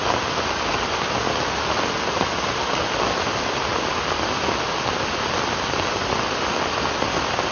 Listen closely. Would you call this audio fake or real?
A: real